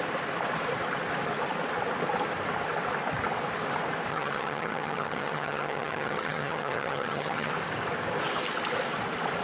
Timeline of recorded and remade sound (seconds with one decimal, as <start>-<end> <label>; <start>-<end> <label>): 0.0-4.1 recorded; 4.1-7.5 remade; 7.5-9.4 recorded